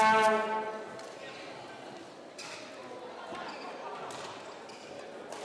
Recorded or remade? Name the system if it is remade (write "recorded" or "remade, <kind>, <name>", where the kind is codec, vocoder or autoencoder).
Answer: recorded